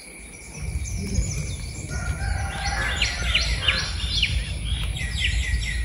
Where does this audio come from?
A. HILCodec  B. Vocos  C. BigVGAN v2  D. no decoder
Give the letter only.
D